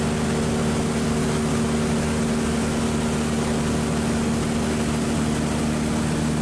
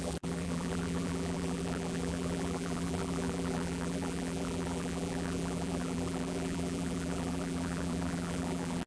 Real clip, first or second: first